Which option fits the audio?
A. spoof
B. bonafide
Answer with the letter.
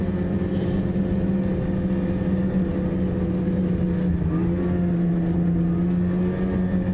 B